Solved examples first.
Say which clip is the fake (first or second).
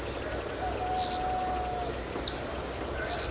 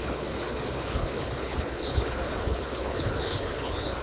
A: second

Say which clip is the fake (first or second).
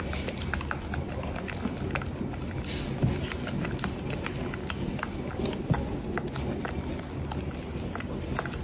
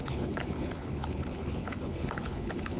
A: second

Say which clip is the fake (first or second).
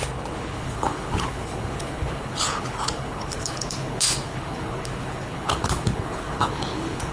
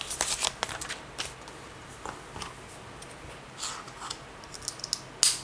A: first